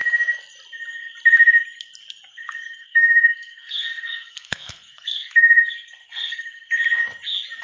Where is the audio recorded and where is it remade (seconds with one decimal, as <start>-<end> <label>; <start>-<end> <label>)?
0.0-2.3 recorded; 2.3-6.7 remade; 6.7-7.6 recorded